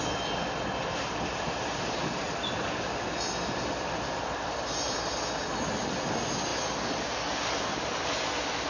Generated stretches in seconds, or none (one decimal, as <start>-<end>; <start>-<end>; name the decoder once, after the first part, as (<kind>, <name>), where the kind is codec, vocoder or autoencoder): none

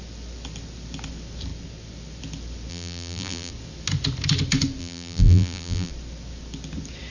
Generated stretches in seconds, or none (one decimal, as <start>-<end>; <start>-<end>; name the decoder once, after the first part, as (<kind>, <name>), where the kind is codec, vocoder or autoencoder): 2.7-3.5 (vocoder, BigVGAN v2); 4.8-5.9

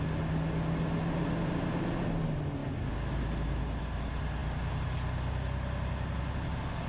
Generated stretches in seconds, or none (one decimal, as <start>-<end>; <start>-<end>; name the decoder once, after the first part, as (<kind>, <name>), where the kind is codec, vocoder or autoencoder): none

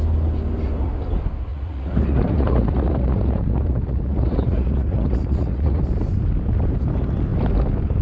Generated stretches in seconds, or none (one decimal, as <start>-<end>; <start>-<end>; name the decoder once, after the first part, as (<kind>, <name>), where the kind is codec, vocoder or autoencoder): 1.5-5.8 (vocoder, Vocos)

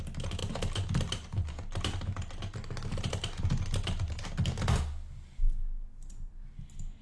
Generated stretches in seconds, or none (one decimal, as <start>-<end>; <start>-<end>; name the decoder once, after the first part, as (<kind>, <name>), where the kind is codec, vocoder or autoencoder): none

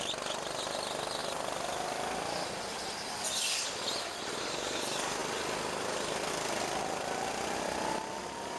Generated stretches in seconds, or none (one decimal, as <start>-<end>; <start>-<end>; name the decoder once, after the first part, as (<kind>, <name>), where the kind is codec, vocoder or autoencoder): none